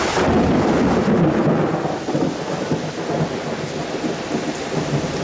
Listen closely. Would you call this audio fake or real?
real